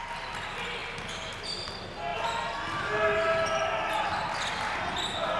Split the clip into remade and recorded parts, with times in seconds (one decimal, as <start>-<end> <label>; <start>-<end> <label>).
0.0-5.4 recorded